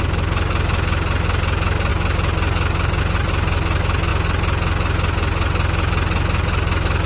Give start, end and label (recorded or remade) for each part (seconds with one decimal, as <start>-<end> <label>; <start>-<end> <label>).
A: 0.0-7.1 recorded